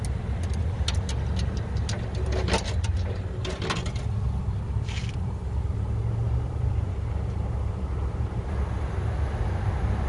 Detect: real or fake real